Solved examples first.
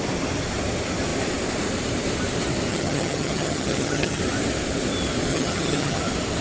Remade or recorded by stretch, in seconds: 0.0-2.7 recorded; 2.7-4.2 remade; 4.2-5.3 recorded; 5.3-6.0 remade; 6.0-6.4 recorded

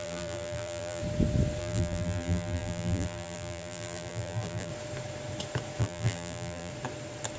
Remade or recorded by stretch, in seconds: 0.0-1.0 remade; 1.0-1.6 recorded; 1.6-4.7 remade; 4.7-5.8 recorded; 5.8-6.7 remade; 6.7-7.4 recorded